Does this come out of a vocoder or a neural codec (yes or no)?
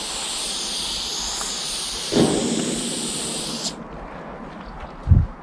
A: no